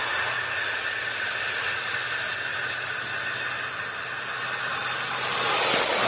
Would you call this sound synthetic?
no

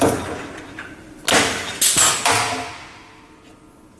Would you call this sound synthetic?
no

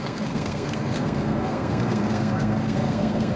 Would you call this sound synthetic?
yes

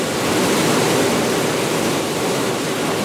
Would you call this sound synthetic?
no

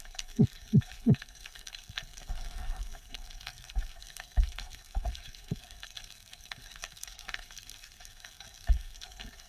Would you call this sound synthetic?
yes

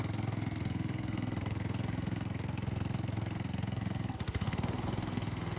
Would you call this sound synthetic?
yes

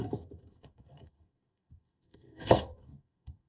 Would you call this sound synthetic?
yes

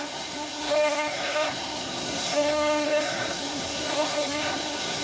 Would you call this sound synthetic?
yes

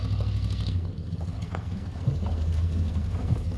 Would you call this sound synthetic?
yes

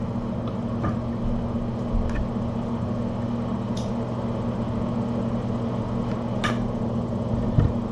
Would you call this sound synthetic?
no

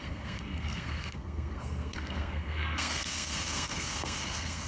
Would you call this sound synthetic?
yes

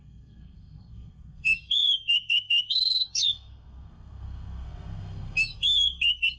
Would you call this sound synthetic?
yes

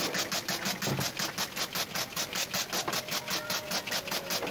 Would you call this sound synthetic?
no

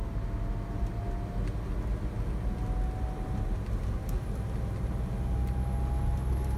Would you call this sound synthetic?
no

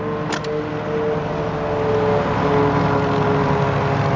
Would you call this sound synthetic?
no